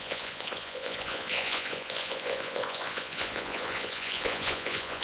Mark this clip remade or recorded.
remade